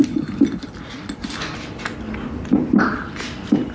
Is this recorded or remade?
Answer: recorded